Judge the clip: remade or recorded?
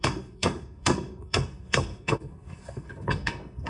remade